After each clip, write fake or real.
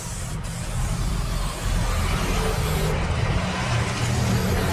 real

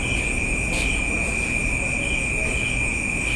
real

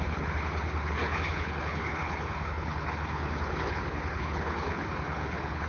fake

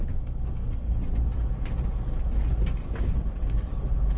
real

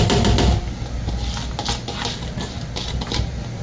real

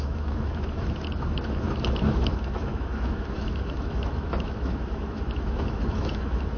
fake